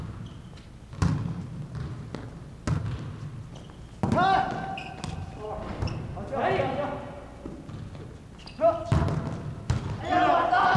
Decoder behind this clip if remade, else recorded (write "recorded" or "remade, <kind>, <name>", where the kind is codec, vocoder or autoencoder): recorded